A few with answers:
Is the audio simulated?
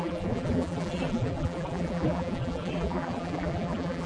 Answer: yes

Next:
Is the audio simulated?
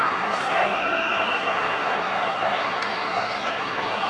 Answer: yes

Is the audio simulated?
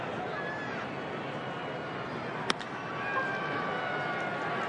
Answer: no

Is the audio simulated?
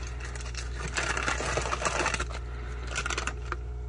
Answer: no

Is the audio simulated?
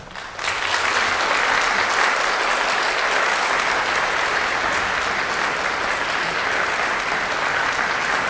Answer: no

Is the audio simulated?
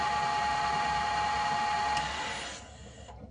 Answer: no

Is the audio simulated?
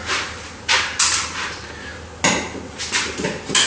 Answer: no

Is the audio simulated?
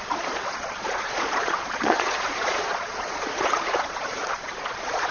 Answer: yes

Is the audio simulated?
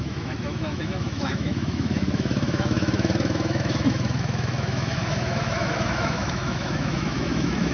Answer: yes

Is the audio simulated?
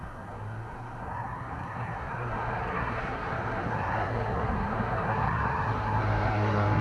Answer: yes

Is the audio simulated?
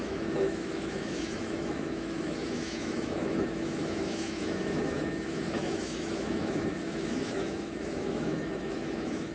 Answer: yes